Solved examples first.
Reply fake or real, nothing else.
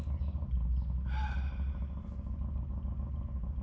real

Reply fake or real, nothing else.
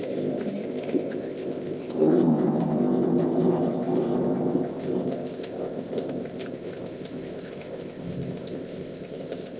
fake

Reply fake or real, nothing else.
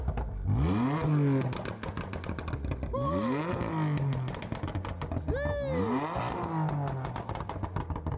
real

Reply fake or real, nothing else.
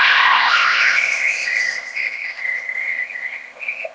fake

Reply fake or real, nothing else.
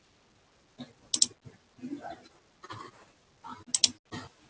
real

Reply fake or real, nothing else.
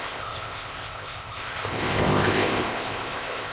fake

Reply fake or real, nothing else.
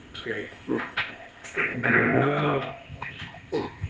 fake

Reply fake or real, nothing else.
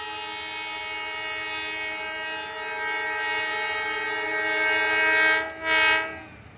real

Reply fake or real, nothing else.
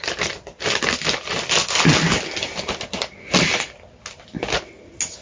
real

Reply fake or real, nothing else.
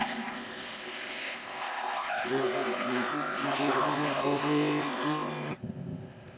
fake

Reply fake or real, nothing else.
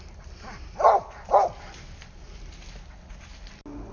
real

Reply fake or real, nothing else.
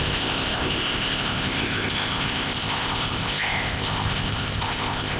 fake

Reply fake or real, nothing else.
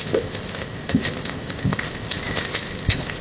fake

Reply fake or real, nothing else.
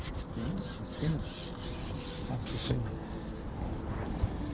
real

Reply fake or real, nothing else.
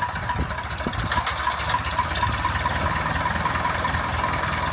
real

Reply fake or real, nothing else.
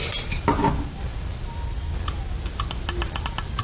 real